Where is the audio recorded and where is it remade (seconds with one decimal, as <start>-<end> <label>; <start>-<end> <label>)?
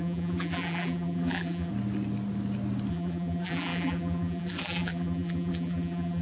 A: 0.0-1.7 remade; 1.7-2.9 recorded; 2.9-6.2 remade